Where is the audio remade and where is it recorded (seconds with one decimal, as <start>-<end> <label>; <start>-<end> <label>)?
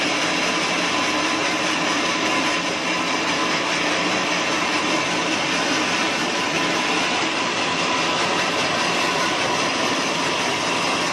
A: 0.0-1.4 recorded; 1.4-2.0 remade; 2.0-3.4 recorded; 3.4-4.8 remade; 4.8-6.2 recorded; 6.2-9.5 remade; 9.5-11.1 recorded